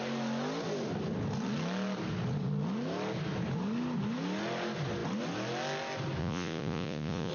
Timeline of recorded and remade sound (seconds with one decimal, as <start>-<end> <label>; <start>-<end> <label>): 0.0-6.2 recorded; 6.2-7.3 remade